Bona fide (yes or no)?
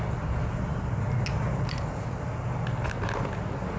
yes